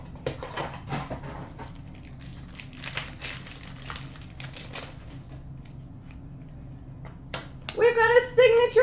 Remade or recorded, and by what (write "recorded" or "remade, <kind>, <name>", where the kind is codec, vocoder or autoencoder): recorded